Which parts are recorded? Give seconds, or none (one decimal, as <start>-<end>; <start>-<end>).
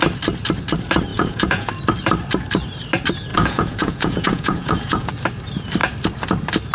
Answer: 0.0-1.1; 1.7-3.3; 5.1-6.7